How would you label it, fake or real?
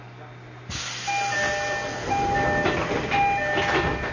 real